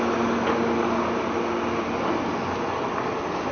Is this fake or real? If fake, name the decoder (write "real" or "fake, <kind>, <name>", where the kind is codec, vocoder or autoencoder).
real